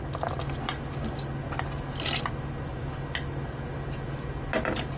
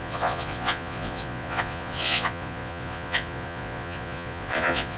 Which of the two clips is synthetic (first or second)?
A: second